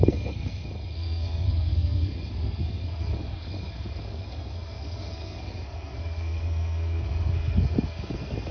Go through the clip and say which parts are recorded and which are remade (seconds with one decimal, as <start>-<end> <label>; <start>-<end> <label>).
0.0-8.5 remade